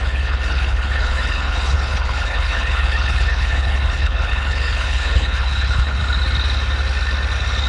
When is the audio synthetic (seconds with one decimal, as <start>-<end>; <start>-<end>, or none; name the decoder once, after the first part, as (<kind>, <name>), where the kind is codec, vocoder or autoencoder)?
0.0-6.0 (codec, HILCodec)